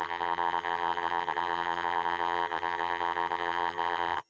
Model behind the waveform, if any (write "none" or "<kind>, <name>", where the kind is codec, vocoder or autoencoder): vocoder, HiFi-GAN